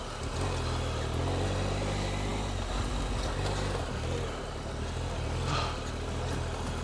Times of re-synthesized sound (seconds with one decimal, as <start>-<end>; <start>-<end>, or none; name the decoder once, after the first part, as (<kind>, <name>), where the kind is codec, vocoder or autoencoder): none